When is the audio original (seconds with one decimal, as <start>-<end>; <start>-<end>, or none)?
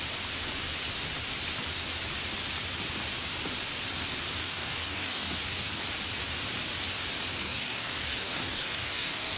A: 0.0-4.4; 5.8-7.3